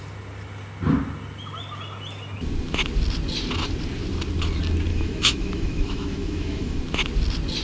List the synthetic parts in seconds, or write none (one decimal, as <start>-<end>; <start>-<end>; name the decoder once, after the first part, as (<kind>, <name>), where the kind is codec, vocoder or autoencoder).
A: 4.9-6.8 (autoencoder, DAC-VAE)